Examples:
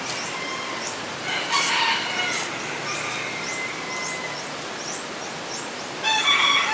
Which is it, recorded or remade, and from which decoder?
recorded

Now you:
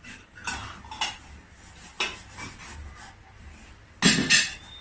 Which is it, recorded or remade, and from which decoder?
recorded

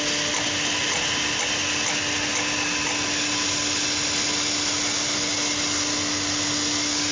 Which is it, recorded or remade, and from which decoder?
recorded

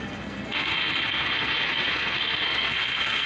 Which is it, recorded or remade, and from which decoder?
remade, codec, SNAC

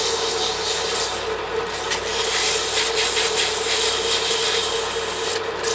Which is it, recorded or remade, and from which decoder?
recorded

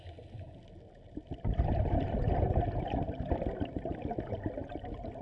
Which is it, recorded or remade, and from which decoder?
recorded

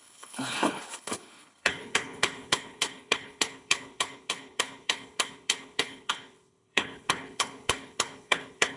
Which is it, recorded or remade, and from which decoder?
remade, codec, HILCodec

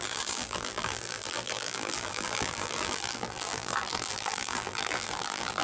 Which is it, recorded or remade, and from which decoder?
remade, vocoder, BigVGAN v2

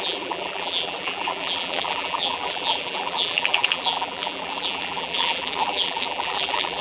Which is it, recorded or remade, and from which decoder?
remade, vocoder, BigVGAN v2